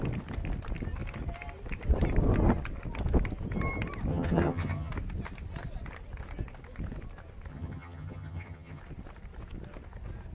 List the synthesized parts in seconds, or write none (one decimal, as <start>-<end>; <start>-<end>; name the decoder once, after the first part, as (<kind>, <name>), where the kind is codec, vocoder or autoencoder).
4.1-4.9 (vocoder, HiFi-GAN); 7.5-8.8